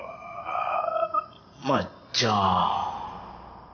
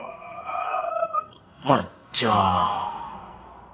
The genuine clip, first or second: first